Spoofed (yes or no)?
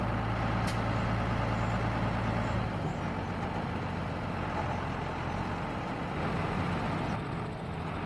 no